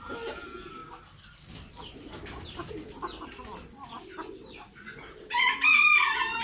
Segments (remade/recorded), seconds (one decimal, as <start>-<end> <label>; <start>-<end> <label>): 0.0-6.4 recorded